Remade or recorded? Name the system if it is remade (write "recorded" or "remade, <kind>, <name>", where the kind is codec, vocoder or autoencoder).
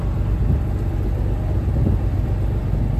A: recorded